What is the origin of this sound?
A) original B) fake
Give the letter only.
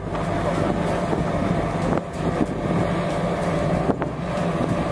A